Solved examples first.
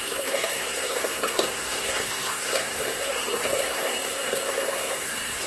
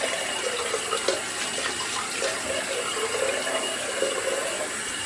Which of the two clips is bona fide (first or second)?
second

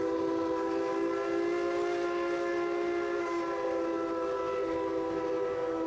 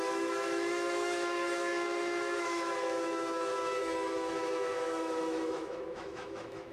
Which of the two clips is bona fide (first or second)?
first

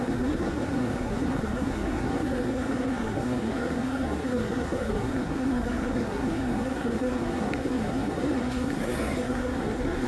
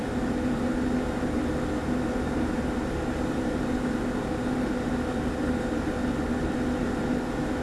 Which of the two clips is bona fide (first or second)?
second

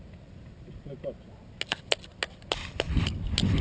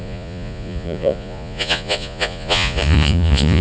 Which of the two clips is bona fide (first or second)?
first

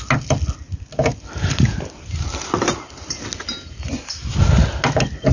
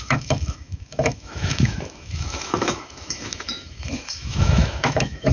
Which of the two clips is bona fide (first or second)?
first